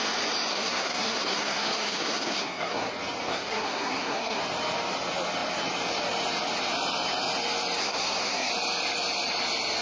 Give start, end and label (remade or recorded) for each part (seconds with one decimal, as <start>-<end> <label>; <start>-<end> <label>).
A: 0.0-0.5 recorded; 0.5-2.9 remade; 2.9-3.3 recorded; 3.3-4.4 remade; 4.4-7.8 recorded; 7.8-8.5 remade; 8.5-9.8 recorded